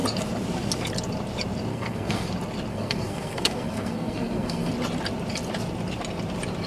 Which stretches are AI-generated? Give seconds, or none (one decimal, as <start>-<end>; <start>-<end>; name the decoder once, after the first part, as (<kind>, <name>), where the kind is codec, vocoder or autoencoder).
1.7-2.3 (codec, SNAC); 2.7-4.7